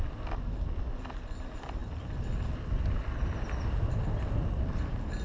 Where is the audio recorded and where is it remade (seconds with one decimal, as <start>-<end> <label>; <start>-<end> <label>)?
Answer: 0.0-5.2 recorded